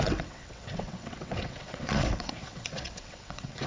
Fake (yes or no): yes